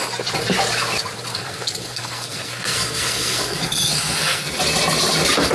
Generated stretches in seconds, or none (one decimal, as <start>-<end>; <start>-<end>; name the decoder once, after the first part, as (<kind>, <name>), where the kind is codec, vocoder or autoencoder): 1.3-4.6 (codec, SNAC)